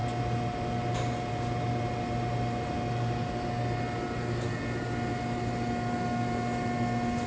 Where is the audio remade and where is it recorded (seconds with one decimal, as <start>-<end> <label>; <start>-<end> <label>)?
0.0-7.3 recorded